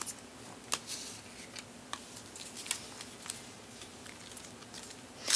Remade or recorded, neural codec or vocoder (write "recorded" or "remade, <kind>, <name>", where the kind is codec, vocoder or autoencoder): recorded